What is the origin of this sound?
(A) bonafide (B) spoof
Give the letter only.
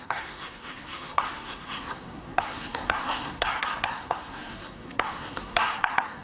B